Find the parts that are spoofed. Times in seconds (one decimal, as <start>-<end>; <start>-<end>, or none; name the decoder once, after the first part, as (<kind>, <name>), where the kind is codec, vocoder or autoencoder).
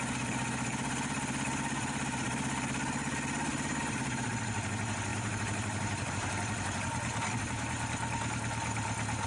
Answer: 3.5-4.3 (vocoder, BigVGAN v2); 5.1-6.1